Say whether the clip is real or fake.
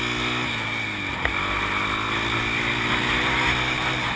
real